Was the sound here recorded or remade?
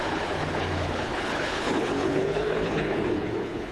remade